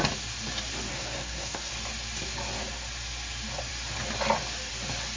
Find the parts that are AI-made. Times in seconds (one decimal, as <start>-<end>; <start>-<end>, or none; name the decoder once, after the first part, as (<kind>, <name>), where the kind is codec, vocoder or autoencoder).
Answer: 0.9-1.7 (codec, SNAC)